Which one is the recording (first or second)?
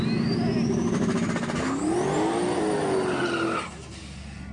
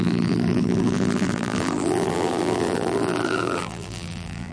first